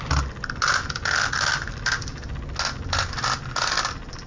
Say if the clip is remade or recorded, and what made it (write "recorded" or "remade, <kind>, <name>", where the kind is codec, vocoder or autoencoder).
recorded